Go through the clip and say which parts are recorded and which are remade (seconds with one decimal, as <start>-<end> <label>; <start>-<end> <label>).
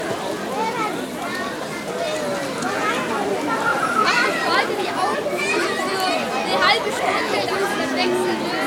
0.0-3.7 recorded; 3.7-5.6 remade; 5.6-6.4 recorded; 6.4-7.8 remade; 7.8-8.7 recorded